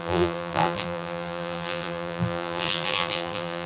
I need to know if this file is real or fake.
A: fake